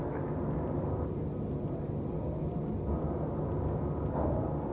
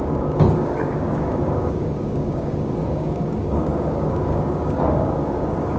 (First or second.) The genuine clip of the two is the first